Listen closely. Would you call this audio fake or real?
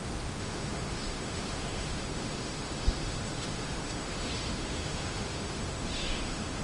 fake